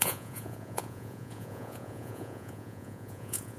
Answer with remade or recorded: remade